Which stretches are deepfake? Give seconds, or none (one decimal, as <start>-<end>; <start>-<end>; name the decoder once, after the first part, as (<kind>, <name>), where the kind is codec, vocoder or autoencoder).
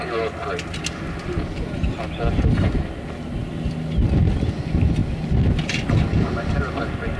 none